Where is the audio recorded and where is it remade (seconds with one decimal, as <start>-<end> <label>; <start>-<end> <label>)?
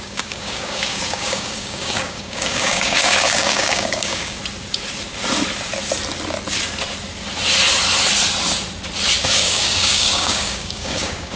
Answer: 0.0-4.4 remade; 4.4-9.2 recorded; 9.2-11.4 remade